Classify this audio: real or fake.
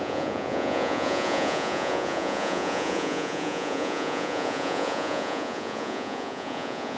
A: fake